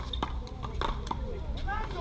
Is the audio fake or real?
real